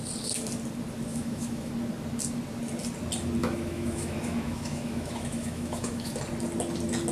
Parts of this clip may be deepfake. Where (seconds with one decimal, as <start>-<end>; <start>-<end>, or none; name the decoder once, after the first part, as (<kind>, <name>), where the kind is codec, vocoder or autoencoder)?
1.1-1.7 (autoencoder, DAC-VAE); 3.4-6.2